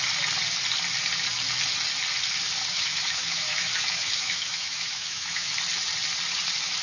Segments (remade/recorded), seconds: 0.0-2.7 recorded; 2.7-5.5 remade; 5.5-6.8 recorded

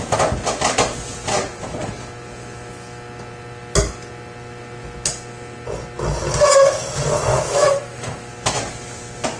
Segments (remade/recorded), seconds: 0.0-7.3 recorded; 7.3-8.3 remade; 8.3-9.4 recorded

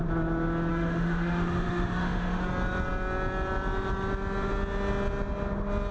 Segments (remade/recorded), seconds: 0.0-0.7 recorded; 0.7-2.4 remade; 2.4-5.9 recorded

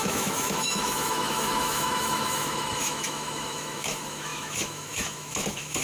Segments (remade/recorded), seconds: 0.0-5.8 remade

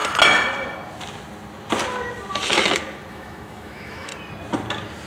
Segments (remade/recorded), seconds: 0.0-3.1 recorded; 3.1-4.1 remade; 4.1-5.1 recorded

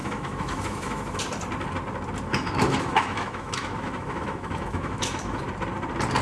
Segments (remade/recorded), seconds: 0.0-1.2 remade; 1.2-2.3 recorded; 2.3-5.4 remade; 5.4-6.2 recorded

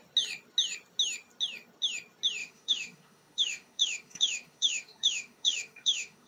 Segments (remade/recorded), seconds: 0.0-2.4 recorded; 2.4-6.3 remade